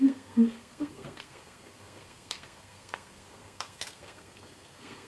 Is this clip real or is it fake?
fake